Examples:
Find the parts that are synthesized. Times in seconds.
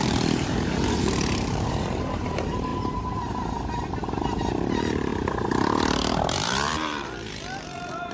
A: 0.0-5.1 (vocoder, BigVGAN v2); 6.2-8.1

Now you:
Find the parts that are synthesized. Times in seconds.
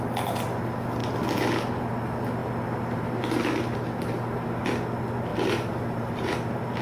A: 5.3-6.3 (vocoder, BigVGAN v2)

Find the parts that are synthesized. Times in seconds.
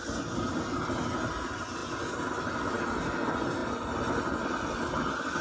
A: 1.8-2.7 (vocoder, BigVGAN v2)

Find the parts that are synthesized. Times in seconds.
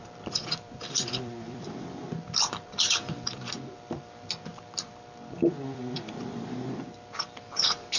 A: 0.0-8.0 (vocoder, BigVGAN v2)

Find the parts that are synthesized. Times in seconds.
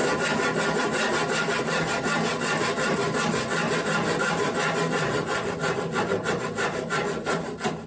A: 4.2-7.9 (vocoder, BigVGAN v2)